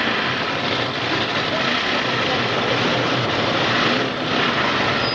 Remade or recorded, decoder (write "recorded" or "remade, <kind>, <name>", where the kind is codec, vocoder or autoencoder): recorded